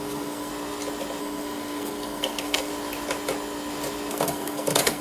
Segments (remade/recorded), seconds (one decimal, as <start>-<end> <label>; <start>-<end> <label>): 0.0-0.5 remade; 0.5-1.2 recorded; 1.2-2.7 remade; 2.7-4.1 recorded; 4.1-5.0 remade